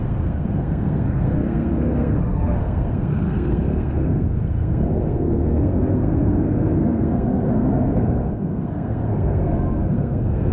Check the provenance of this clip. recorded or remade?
remade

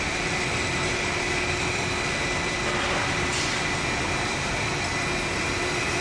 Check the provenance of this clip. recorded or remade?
recorded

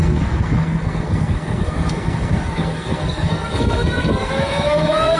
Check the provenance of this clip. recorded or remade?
remade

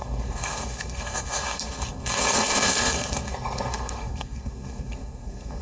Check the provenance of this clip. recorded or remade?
remade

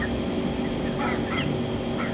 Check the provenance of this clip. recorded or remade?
recorded